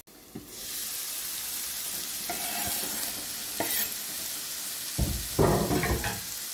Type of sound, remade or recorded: recorded